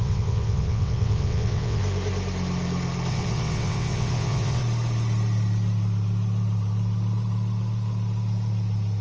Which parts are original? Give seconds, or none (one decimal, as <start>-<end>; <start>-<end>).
1.8-3.1; 4.6-9.0